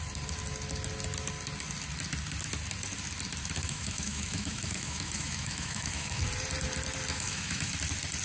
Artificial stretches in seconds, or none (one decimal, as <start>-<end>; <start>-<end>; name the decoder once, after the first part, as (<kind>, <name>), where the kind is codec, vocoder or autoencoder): 3.6-6.2 (autoencoder, DAC-VAE); 7.1-7.7